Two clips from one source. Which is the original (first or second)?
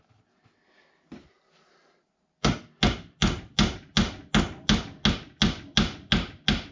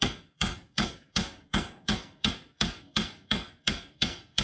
first